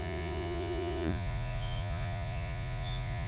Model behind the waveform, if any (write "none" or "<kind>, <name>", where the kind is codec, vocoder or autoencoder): vocoder, Vocos